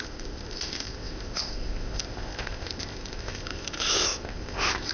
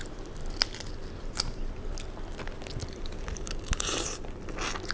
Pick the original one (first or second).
second